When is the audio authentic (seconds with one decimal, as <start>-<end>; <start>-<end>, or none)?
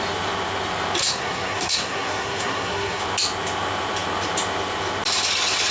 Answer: 0.0-1.0; 3.0-5.7